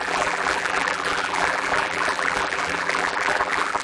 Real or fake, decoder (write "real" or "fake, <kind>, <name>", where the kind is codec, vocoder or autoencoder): fake, vocoder, BigVGAN v2